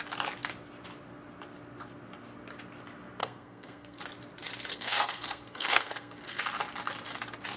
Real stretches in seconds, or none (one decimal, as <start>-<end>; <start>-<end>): 0.0-3.2; 4.0-4.7; 6.4-7.6